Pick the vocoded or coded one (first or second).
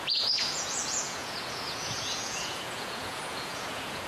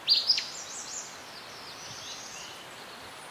first